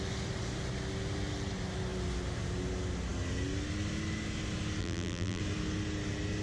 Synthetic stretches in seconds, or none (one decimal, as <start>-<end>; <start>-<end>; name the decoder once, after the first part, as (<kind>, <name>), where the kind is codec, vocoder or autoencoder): 4.8-5.4 (vocoder, BigVGAN v2)